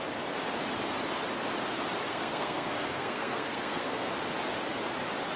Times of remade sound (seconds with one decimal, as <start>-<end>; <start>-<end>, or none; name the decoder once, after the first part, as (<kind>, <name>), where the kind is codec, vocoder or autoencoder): 2.1-4.1 (codec, SNAC)